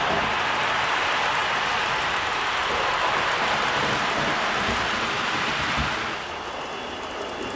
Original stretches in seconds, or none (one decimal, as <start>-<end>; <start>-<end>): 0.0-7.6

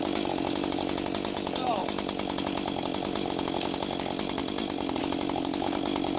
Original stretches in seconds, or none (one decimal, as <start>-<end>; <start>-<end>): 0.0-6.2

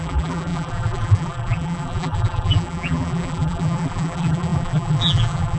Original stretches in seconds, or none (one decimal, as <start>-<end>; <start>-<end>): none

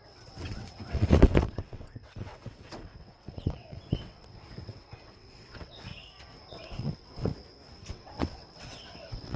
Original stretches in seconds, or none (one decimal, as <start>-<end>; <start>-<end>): 5.9-6.5; 7.3-7.9